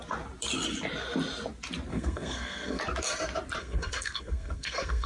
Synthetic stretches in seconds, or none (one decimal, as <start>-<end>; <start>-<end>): 1.9-2.8; 3.6-5.1